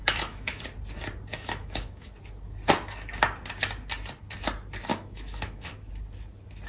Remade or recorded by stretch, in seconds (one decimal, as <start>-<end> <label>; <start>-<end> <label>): 0.0-0.6 remade; 0.6-1.3 recorded; 1.3-2.1 remade; 2.1-4.9 recorded; 4.9-5.9 remade; 5.9-6.7 recorded